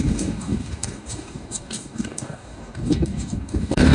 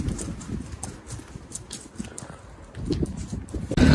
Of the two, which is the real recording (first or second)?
second